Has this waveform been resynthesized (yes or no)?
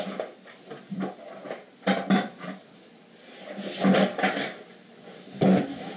no